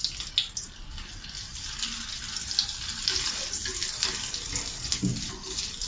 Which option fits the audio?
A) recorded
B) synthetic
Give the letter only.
A